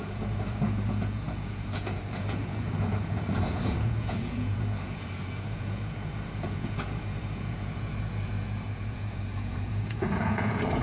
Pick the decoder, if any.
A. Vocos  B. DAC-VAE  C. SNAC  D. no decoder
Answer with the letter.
A